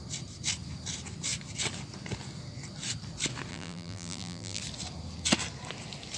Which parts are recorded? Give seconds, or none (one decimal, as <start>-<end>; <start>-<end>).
0.0-3.5; 4.6-6.2